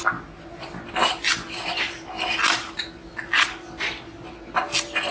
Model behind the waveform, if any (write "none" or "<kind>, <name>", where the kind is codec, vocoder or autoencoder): none